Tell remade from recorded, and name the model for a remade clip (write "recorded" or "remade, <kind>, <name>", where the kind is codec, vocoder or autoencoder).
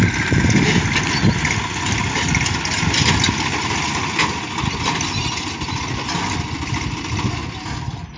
recorded